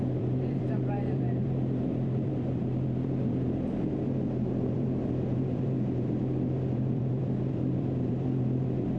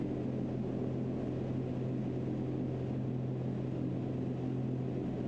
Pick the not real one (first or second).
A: first